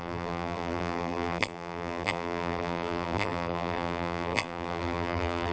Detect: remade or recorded remade